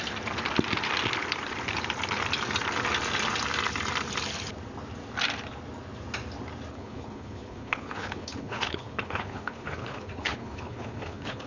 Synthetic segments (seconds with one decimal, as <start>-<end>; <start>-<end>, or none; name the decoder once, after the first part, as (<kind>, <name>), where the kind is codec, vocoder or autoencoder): 6.7-11.5 (codec, HILCodec)